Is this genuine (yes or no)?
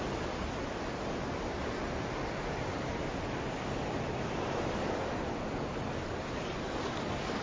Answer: yes